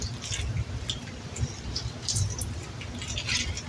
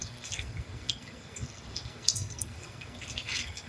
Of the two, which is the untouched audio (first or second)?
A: first